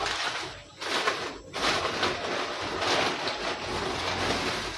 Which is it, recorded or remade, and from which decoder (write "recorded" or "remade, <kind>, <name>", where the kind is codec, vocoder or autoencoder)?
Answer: recorded